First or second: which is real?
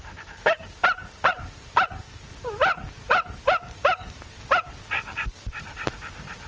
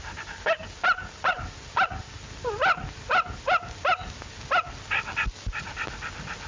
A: second